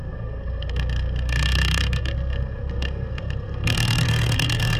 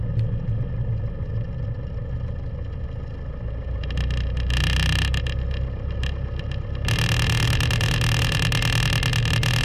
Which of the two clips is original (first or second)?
second